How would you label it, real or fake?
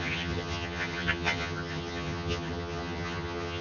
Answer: fake